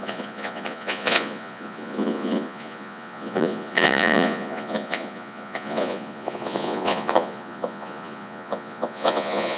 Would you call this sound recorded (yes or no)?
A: no